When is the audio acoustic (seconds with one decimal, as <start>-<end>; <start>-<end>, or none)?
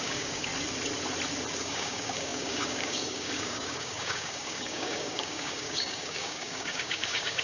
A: 0.5-1.6